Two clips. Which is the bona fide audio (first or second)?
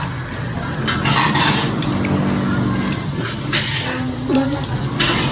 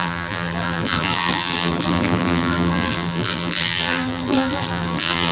first